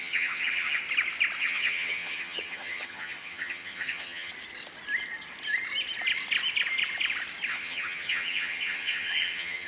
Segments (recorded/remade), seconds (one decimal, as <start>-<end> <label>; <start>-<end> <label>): 0.0-0.8 remade; 0.8-1.4 recorded; 1.4-4.3 remade; 4.3-7.5 recorded; 7.5-9.7 remade